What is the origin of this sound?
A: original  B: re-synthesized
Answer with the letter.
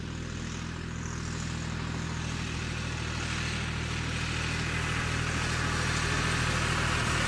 A